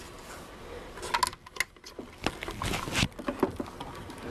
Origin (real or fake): real